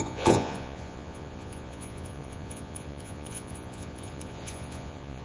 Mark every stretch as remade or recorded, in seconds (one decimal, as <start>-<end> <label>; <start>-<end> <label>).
0.0-5.2 remade